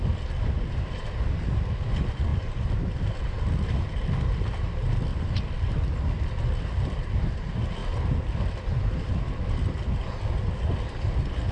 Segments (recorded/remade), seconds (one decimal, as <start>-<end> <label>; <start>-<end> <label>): 0.0-11.5 recorded